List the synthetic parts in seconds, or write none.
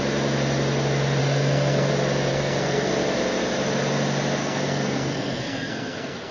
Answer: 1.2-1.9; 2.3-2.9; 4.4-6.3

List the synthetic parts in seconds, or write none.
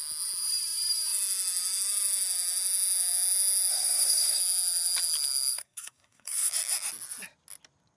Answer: 3.7-4.4; 5.5-6.5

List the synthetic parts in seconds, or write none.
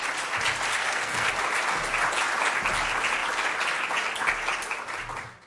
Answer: 0.8-1.3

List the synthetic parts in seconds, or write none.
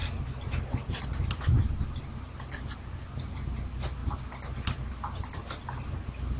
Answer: none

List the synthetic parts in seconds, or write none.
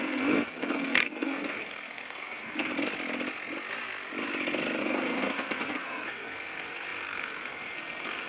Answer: 0.0-2.7; 4.8-8.3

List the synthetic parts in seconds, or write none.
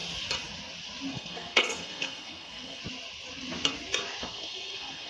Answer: 1.1-2.8; 4.2-5.1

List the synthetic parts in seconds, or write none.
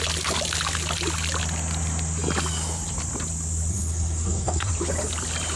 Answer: 3.7-4.7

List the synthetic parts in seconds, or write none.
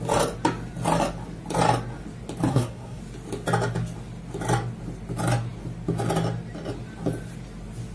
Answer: 2.5-3.0